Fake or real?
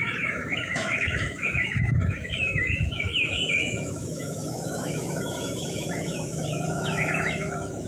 fake